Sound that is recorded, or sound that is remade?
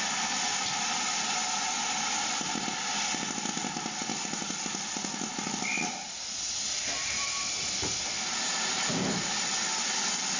recorded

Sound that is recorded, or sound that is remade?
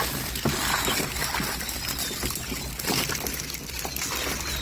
recorded